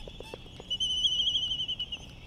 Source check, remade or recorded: recorded